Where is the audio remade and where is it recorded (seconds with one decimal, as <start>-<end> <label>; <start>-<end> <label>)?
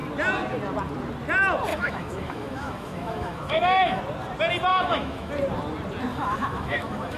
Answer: 0.0-1.7 recorded; 1.7-4.0 remade; 4.0-4.7 recorded; 4.7-5.3 remade; 5.3-6.1 recorded; 6.1-7.2 remade